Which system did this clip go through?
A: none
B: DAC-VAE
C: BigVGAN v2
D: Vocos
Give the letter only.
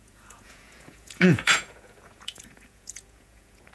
D